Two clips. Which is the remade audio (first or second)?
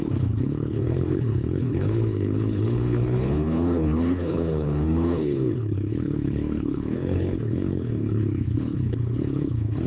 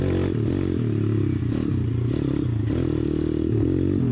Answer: first